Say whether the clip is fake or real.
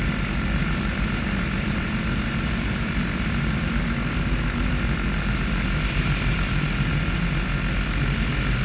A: real